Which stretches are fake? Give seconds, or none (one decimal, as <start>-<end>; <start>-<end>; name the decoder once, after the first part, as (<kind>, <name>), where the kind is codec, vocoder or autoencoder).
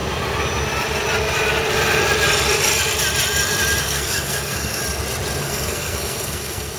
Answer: 3.8-4.8 (codec, SNAC); 5.4-6.8